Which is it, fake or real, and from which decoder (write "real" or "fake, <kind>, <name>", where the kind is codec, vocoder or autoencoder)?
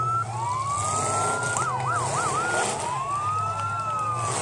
real